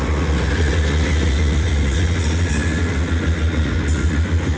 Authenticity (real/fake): fake